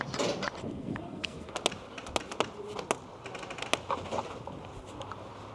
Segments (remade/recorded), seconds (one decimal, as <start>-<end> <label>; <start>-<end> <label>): 0.0-0.6 recorded; 0.6-1.5 remade; 1.5-5.5 recorded